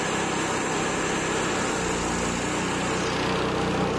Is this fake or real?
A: real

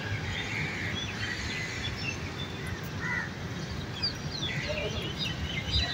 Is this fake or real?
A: real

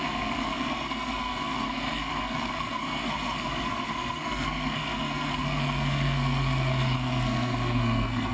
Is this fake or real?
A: fake